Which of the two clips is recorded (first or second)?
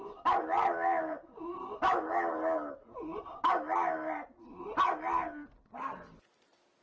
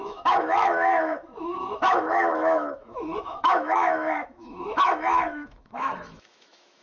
first